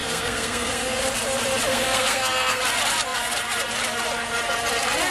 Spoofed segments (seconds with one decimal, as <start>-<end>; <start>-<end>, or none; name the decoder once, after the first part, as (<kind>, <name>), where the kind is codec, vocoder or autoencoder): 0.0-1.0 (codec, SNAC); 1.7-2.6